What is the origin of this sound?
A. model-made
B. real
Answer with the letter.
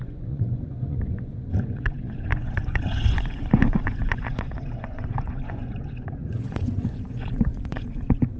A